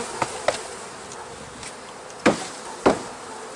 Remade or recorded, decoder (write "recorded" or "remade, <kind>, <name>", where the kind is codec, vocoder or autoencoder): recorded